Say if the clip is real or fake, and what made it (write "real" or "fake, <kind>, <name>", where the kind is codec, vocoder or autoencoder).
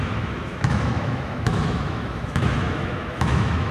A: fake, autoencoder, DAC-VAE